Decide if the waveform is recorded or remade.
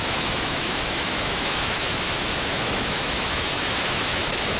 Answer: remade